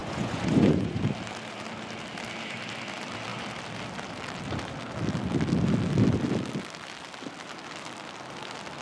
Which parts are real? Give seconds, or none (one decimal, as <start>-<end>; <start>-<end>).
1.0-8.8